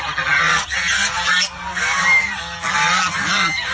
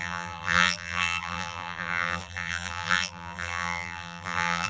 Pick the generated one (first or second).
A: second